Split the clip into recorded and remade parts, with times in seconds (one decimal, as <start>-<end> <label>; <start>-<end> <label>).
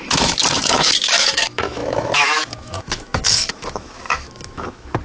0.0-5.0 remade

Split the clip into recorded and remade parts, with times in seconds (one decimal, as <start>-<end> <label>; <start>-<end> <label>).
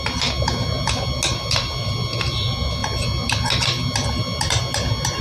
0.0-5.2 recorded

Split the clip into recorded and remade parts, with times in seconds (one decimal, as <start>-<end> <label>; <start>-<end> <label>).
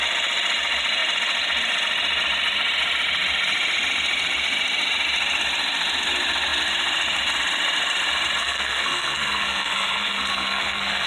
0.0-8.4 recorded; 8.4-11.1 remade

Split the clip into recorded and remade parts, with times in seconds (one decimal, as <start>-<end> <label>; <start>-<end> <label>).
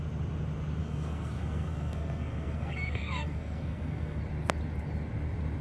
0.0-0.8 recorded; 0.8-4.2 remade; 4.2-5.6 recorded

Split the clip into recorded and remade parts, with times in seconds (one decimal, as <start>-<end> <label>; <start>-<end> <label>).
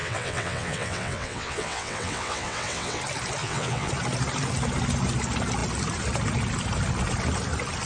0.0-3.0 remade; 3.0-3.4 recorded; 3.4-3.9 remade; 3.9-7.9 recorded